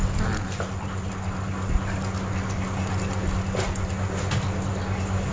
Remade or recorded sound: recorded